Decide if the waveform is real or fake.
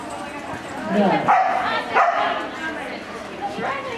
real